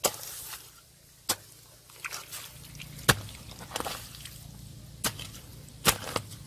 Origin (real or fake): real